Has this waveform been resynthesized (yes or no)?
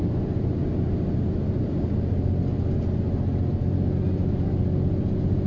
no